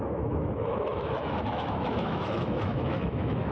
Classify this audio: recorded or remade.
remade